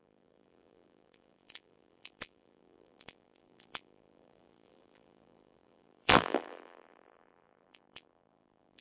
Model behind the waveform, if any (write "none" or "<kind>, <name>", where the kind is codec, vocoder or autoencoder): vocoder, BigVGAN v2